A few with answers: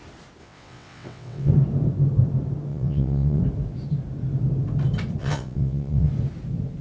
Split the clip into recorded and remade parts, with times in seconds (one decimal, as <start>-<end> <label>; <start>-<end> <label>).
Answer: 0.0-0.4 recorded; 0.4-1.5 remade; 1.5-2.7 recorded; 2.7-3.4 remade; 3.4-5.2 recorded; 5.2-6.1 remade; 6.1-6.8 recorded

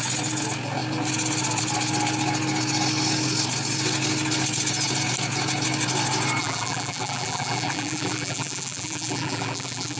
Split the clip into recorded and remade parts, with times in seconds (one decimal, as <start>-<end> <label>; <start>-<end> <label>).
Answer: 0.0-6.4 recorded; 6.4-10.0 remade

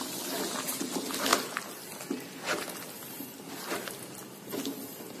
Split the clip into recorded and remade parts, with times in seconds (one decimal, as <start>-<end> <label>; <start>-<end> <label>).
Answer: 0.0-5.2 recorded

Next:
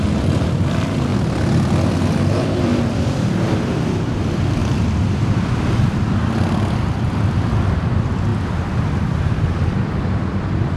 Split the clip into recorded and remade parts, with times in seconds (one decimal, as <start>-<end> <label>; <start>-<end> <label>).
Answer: 0.0-1.1 remade; 1.1-2.2 recorded; 2.2-4.6 remade; 4.6-5.2 recorded; 5.2-8.3 remade; 8.3-9.0 recorded; 9.0-10.8 remade

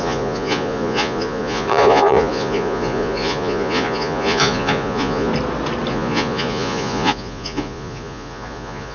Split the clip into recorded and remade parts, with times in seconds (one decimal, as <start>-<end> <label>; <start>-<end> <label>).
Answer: 0.0-5.3 remade; 5.3-5.9 recorded; 5.9-8.9 remade

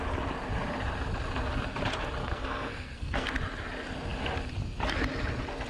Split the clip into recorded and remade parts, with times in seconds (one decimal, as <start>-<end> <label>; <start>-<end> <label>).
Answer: 0.0-2.2 recorded; 2.2-3.3 remade; 3.3-5.7 recorded

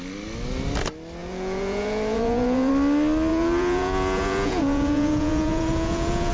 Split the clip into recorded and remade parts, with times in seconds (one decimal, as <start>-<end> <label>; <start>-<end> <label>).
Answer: 0.0-1.2 recorded; 1.2-2.7 remade; 2.7-3.3 recorded; 3.3-6.3 remade

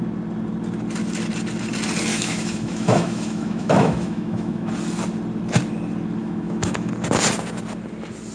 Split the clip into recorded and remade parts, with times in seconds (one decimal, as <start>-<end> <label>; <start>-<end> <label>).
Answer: 0.0-2.1 recorded; 2.1-4.7 remade; 4.7-6.2 recorded; 6.2-6.9 remade; 6.9-8.3 recorded